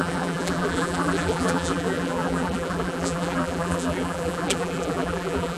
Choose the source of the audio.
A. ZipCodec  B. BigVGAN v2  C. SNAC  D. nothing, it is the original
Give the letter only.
B